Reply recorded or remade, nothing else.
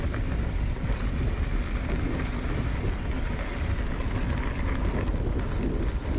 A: recorded